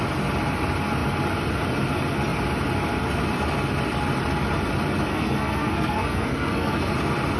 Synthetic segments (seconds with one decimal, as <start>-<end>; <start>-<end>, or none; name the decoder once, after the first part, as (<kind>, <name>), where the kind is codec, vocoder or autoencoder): 5.1-6.9 (codec, SNAC)